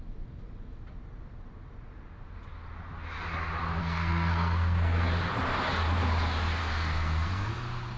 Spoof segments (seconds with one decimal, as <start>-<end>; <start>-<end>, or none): 3.8-5.1; 6.6-7.5